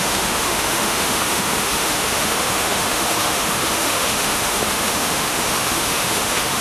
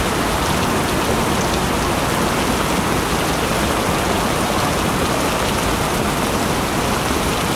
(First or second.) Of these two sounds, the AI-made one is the first